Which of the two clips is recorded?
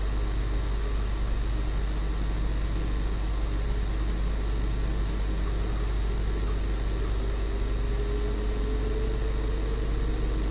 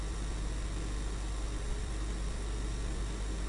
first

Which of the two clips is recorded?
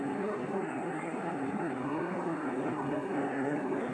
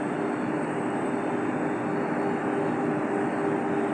second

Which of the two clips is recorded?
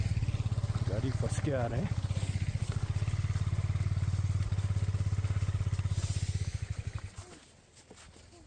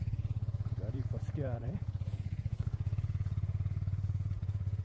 first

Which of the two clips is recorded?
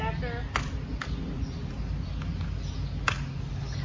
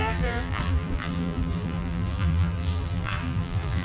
first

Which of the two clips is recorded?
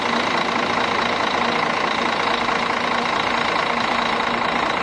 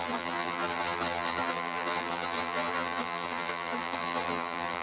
first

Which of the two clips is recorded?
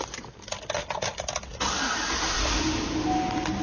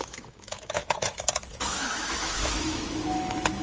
first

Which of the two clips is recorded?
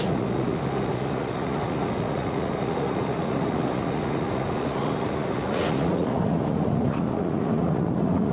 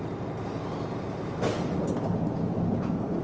second